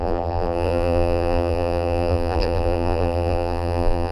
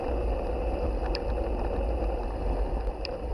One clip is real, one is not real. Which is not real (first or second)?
first